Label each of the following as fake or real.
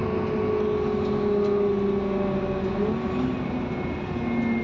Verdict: real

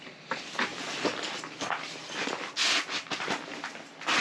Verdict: real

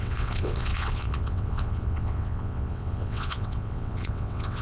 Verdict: fake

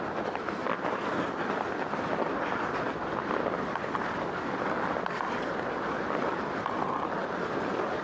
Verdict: real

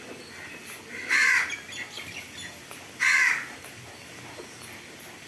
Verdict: real